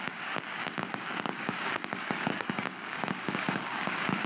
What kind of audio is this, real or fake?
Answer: fake